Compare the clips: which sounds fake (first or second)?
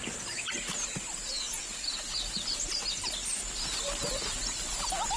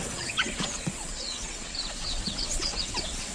second